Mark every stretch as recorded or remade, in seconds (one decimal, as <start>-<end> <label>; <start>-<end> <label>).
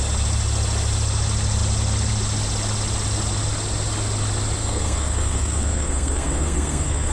0.0-4.6 recorded; 4.6-7.1 remade